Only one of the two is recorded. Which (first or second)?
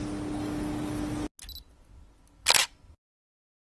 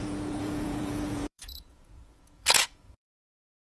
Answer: first